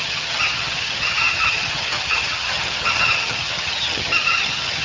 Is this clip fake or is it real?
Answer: fake